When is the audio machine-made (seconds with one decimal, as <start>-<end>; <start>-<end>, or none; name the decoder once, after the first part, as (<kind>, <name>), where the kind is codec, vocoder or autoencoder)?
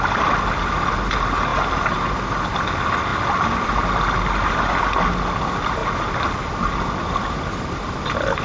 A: none